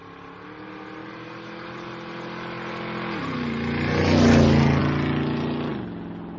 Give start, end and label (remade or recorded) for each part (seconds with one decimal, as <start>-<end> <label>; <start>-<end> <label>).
0.0-6.4 recorded